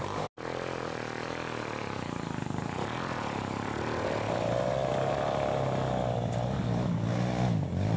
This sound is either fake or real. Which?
real